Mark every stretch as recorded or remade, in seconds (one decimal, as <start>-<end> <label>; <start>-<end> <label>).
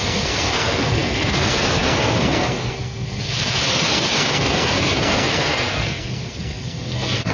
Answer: 0.0-7.3 remade